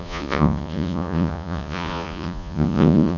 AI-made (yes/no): yes